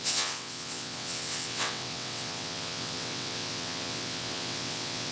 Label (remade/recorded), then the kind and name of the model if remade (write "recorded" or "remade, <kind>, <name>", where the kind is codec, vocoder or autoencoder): remade, vocoder, WaveNeXt